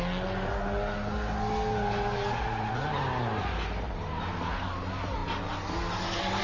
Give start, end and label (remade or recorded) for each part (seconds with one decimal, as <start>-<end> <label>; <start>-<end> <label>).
0.0-6.4 recorded